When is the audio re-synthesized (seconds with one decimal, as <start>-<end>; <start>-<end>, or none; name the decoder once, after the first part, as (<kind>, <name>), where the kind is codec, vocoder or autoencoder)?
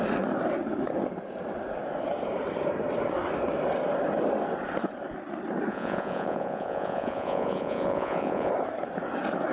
5.7-8.5 (vocoder, Vocos)